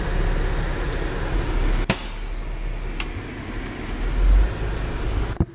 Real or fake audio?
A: real